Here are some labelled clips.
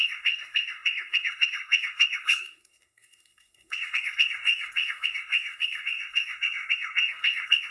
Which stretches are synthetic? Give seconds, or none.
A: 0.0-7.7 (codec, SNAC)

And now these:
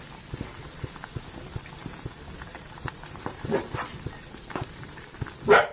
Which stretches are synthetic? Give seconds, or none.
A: 1.8-5.2 (vocoder, BigVGAN v2)

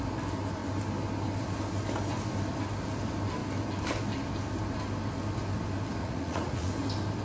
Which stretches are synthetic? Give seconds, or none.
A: 6.0-6.7 (vocoder, Vocos)